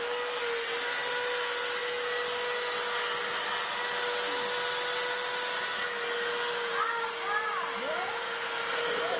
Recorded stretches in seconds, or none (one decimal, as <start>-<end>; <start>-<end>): 0.0-9.2